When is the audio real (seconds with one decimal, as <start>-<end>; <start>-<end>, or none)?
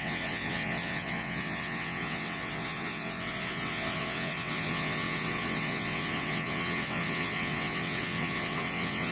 none